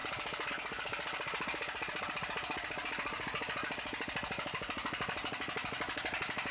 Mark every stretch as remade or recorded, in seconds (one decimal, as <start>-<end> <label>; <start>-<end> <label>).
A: 0.0-6.5 recorded